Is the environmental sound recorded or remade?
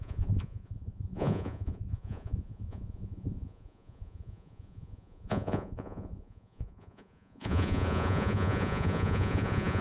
remade